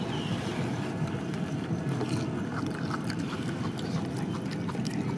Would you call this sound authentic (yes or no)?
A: yes